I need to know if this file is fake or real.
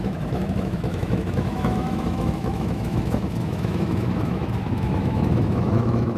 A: fake